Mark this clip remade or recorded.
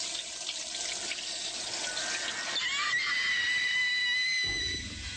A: recorded